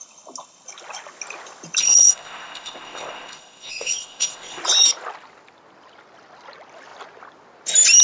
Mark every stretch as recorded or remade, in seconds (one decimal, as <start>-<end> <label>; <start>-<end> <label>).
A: 0.0-1.8 recorded; 1.8-4.6 remade; 4.6-8.0 recorded